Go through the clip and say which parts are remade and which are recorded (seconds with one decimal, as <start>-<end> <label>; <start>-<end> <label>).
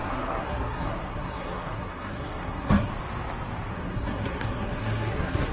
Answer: 0.0-2.9 remade; 2.9-3.7 recorded; 3.7-5.5 remade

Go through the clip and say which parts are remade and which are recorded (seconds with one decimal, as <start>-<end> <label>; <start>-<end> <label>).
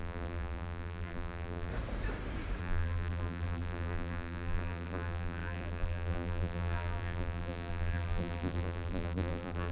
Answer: 0.0-1.7 remade; 1.7-2.6 recorded; 2.6-9.7 remade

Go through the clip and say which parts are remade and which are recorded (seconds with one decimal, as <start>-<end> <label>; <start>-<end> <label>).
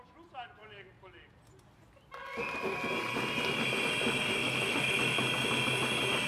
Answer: 0.0-4.4 recorded; 4.4-5.2 remade; 5.2-6.3 recorded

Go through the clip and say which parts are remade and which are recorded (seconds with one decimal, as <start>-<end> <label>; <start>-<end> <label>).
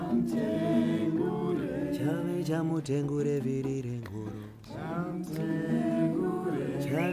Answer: 0.0-7.1 recorded